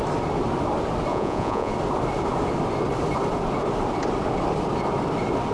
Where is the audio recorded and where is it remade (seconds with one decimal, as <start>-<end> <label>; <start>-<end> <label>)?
0.0-1.1 recorded; 1.1-1.7 remade; 1.7-5.5 recorded